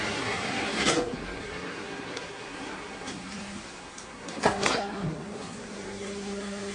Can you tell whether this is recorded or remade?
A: remade